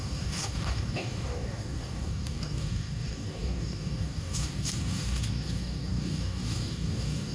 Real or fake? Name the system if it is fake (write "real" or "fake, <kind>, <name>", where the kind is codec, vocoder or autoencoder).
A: fake, codec, DAC